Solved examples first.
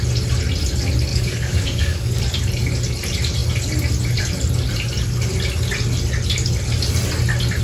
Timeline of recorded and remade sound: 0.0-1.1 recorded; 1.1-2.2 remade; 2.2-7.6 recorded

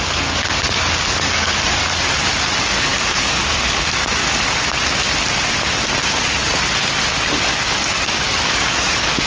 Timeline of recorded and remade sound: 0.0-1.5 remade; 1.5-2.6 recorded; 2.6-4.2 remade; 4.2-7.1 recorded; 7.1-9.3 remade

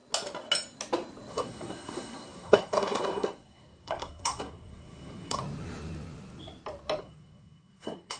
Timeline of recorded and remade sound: 0.0-1.3 recorded; 1.3-5.4 remade; 5.4-7.0 recorded; 7.0-8.2 remade

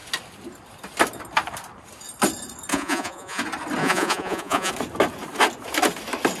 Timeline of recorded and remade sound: 0.0-2.7 recorded; 2.7-3.4 remade; 3.4-3.8 recorded; 3.8-4.7 remade; 4.7-6.4 recorded

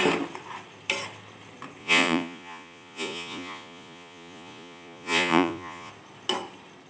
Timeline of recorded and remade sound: 0.0-1.8 recorded; 1.8-5.9 remade; 5.9-6.9 recorded